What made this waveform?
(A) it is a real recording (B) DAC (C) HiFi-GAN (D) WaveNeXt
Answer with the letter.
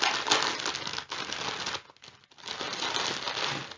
A